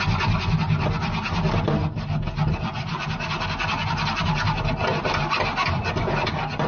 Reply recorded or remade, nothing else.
recorded